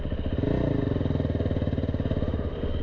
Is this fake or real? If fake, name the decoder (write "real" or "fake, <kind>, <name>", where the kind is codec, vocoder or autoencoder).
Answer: real